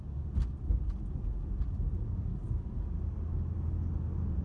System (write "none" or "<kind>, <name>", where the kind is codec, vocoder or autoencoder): none